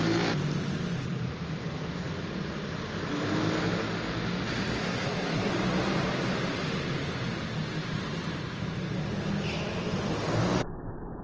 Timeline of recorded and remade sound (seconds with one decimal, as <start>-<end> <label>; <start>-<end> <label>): 0.0-4.8 recorded; 4.8-5.5 remade; 5.5-11.2 recorded